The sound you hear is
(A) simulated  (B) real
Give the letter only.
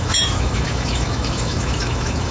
A